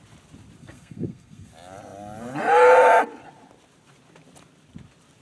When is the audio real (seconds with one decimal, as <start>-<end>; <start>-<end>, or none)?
0.0-0.6; 1.5-5.2